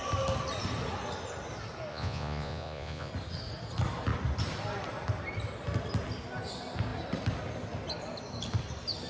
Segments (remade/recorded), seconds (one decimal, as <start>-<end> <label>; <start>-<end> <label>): 0.0-1.9 recorded; 1.9-3.1 remade; 3.1-9.1 recorded